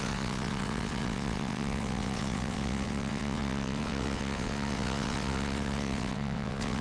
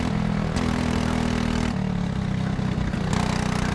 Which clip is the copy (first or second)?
first